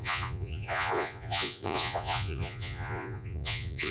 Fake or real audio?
fake